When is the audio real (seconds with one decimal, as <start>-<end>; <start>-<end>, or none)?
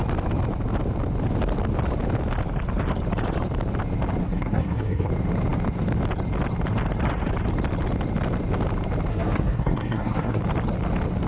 0.0-4.2; 5.1-9.1; 10.4-11.3